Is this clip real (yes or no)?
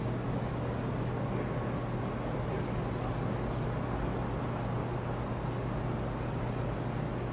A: yes